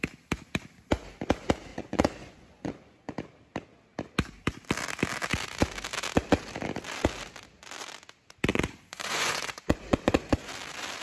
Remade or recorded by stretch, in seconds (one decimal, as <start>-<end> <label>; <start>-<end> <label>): 0.0-1.7 recorded; 1.7-3.1 remade; 3.1-8.5 recorded; 8.5-10.5 remade; 10.5-11.0 recorded